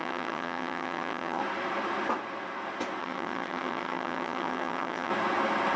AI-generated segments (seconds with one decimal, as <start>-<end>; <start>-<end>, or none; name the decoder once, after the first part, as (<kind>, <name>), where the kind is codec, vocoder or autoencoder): 0.0-1.4 (vocoder, HiFi-GAN); 3.0-5.1